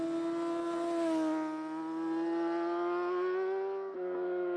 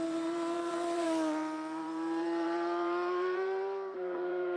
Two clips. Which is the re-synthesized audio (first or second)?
second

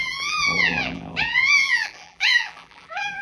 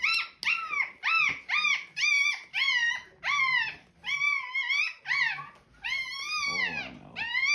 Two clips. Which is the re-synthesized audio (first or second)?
first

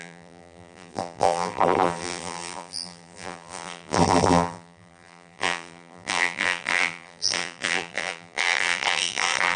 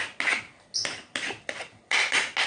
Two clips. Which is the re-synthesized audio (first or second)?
first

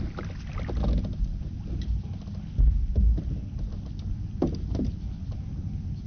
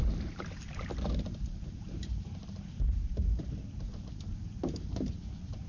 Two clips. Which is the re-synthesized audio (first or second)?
second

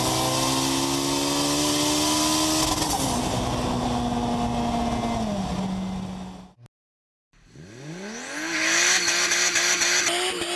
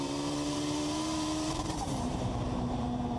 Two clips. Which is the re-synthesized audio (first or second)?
second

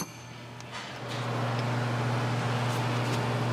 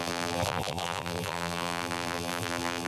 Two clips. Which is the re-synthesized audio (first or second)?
second